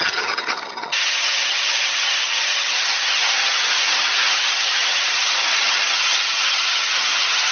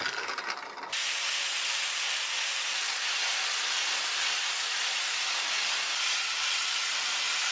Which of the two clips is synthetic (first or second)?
first